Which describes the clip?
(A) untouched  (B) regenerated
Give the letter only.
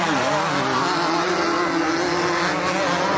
A